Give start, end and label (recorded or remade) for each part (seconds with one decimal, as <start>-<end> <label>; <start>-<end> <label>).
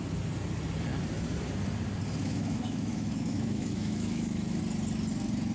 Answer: 0.0-2.2 recorded; 2.2-4.6 remade; 4.6-5.5 recorded